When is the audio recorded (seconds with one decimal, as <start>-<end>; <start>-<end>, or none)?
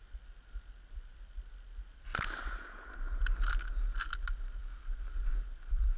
0.0-6.0